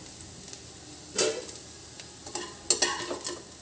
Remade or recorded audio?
recorded